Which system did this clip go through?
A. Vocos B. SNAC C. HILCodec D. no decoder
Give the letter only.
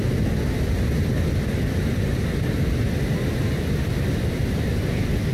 D